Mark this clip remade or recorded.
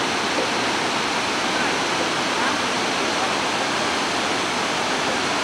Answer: recorded